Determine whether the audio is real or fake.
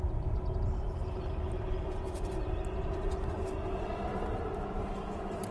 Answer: real